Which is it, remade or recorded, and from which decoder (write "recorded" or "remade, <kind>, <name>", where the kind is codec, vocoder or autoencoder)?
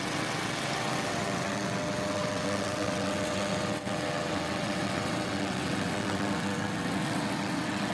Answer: remade, vocoder, WaveNeXt